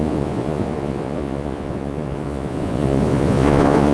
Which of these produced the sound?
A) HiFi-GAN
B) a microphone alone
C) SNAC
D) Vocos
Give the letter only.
D